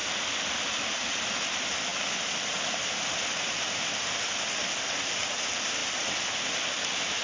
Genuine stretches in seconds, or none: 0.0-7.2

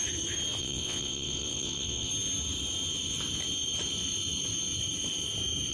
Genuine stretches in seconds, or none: 0.0-0.6; 2.1-5.7

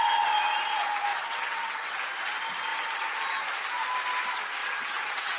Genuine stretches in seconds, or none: 0.0-1.1; 1.9-4.6